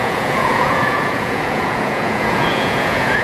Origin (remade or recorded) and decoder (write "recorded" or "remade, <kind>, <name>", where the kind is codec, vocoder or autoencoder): remade, vocoder, Vocos